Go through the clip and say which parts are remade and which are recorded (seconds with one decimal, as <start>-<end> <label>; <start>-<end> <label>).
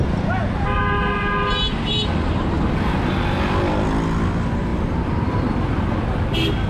0.0-6.7 recorded